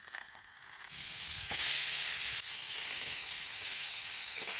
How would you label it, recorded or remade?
remade